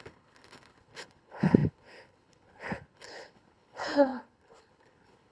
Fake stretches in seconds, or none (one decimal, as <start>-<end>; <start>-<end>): 0.0-5.3